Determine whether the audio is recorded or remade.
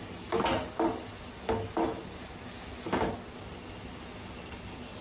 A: recorded